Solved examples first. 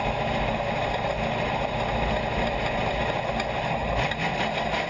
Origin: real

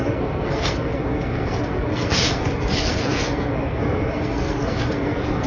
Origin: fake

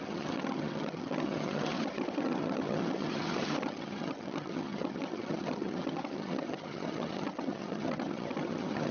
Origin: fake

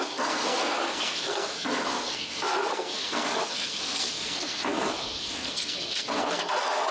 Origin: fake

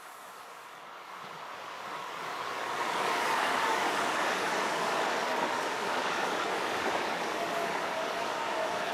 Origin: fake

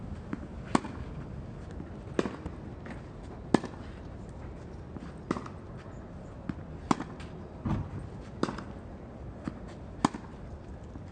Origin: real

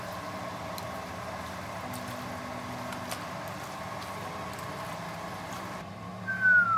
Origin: real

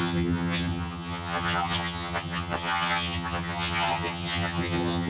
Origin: fake